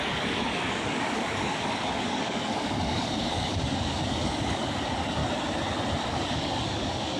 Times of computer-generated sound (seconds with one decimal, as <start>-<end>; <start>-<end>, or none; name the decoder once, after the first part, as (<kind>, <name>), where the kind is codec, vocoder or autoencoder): 0.0-5.2 (codec, DAC); 6.0-7.2